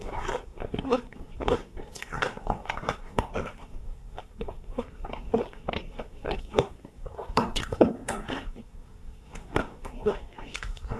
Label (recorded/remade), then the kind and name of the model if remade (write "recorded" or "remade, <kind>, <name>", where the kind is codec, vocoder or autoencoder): remade, codec, SNAC